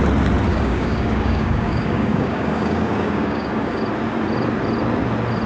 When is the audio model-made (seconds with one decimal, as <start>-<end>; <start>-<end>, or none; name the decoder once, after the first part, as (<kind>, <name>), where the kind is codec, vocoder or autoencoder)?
0.5-3.8 (codec, DAC)